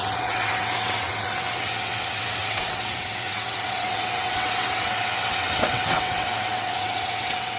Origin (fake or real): fake